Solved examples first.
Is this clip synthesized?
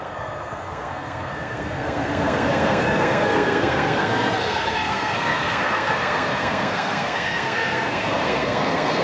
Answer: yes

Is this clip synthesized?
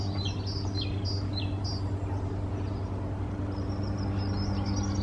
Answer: no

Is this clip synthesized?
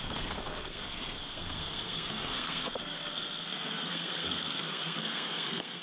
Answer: yes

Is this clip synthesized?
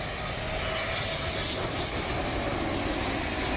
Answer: no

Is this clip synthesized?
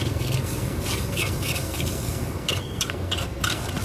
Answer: yes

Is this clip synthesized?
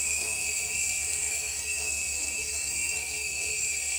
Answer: yes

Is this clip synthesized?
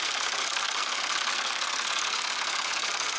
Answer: yes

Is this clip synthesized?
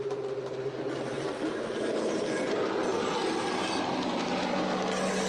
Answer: no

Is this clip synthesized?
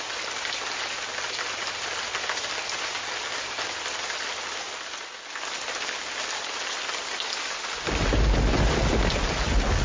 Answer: no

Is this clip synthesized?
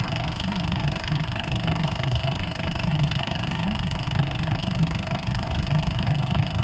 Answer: yes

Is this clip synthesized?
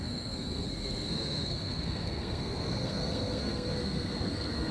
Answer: yes